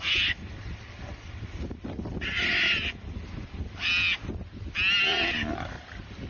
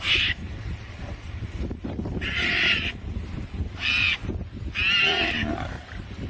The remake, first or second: second